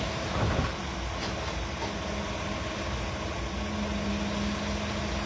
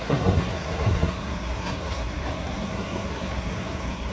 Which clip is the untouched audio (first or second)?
first